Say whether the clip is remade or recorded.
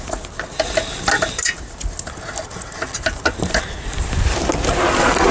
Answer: recorded